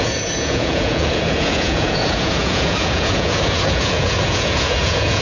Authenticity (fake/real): fake